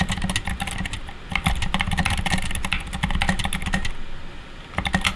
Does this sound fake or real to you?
real